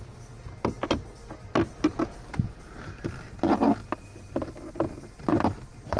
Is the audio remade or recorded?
recorded